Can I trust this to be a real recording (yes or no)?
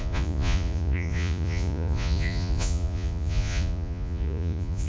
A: no